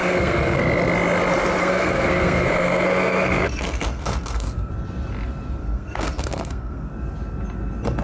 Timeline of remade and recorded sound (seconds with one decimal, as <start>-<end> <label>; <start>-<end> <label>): 0.0-0.6 remade; 0.6-1.6 recorded; 1.6-4.7 remade; 4.7-5.6 recorded; 5.6-6.9 remade; 6.9-8.0 recorded